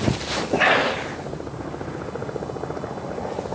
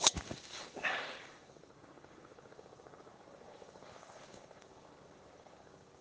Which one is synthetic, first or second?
second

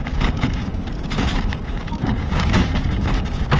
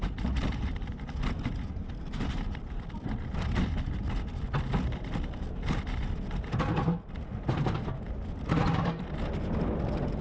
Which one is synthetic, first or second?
first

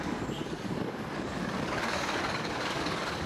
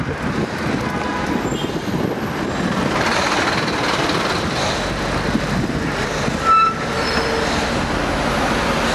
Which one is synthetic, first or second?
first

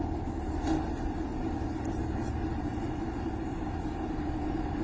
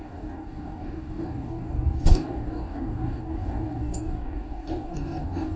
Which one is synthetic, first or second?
second